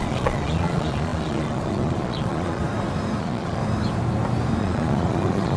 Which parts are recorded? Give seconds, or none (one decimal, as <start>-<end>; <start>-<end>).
2.6-3.2; 3.6-4.6